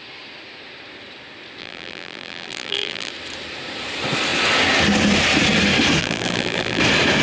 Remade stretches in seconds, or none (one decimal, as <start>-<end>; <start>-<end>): 1.6-3.1; 6.0-6.8